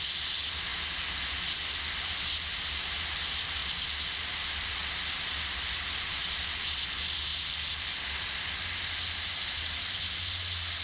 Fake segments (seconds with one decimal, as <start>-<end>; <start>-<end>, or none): 3.6-4.3; 7.3-8.0